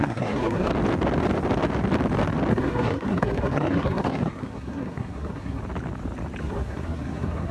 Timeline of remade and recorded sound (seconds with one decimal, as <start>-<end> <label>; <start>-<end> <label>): 0.0-0.7 remade; 0.7-2.5 recorded; 2.5-5.6 remade; 5.6-6.4 recorded; 6.4-7.5 remade